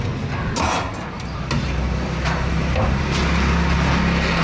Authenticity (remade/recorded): recorded